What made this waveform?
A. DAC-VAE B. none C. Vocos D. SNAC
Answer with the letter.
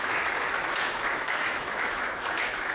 A